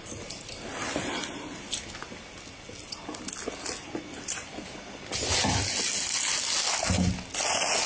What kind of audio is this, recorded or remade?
recorded